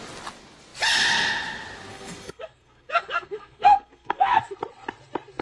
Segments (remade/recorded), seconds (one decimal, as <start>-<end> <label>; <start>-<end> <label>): 0.0-1.9 recorded; 1.9-4.4 remade; 4.4-5.4 recorded